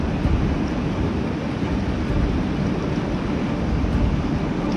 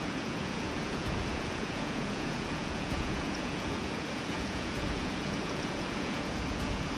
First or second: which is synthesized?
second